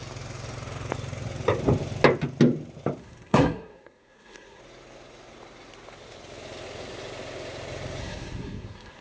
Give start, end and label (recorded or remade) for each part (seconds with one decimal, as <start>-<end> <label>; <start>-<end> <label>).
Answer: 0.0-3.0 recorded; 3.0-4.6 remade; 4.6-8.0 recorded; 8.0-9.0 remade

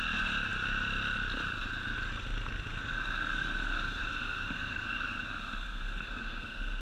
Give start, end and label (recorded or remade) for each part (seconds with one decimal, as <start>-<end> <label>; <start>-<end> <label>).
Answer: 0.0-2.9 recorded; 2.9-6.8 remade

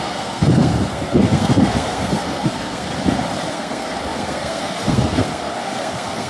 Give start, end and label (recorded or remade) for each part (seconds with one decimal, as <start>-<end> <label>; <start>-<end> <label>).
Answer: 0.0-2.9 remade; 2.9-3.5 recorded; 3.5-6.3 remade